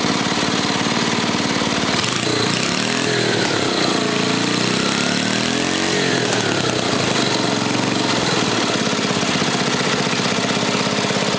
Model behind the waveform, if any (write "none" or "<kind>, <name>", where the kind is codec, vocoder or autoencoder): none